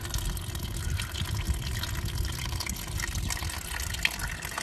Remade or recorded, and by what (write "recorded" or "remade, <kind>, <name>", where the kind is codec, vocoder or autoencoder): recorded